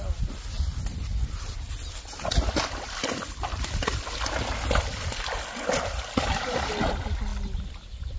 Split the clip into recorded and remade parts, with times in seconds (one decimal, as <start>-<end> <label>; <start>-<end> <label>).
0.0-8.2 recorded